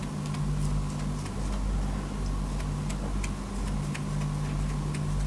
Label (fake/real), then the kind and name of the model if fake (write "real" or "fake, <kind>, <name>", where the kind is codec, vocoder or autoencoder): real